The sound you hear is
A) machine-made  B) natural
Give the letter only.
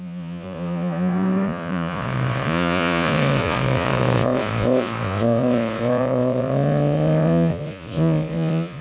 A